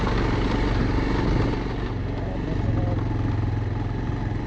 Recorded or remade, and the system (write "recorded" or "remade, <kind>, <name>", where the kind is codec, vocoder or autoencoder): recorded